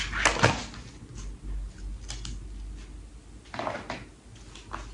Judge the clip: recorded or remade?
recorded